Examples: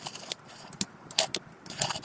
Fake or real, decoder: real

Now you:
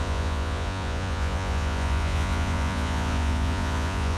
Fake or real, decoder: fake, vocoder, Vocos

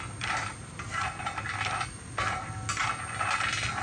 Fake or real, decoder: real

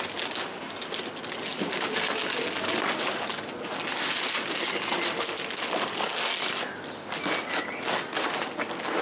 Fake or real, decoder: real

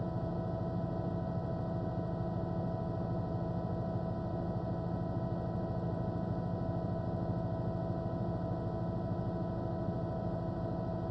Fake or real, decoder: real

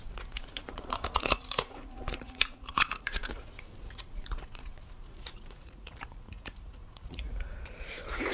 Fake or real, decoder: fake, vocoder, Vocos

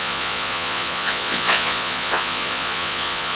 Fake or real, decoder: fake, vocoder, Vocos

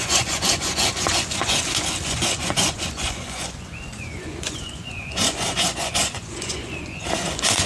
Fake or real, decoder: fake, vocoder, Vocos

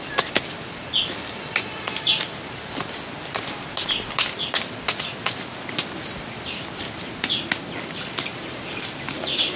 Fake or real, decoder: real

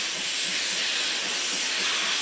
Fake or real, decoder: real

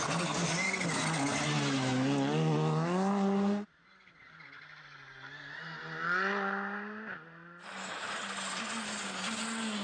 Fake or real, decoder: real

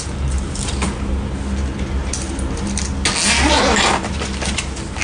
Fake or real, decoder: real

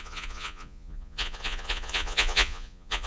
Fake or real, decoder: fake, vocoder, Vocos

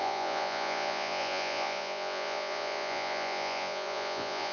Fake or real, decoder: fake, vocoder, Vocos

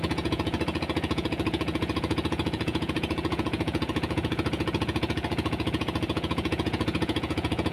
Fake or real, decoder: fake, vocoder, Vocos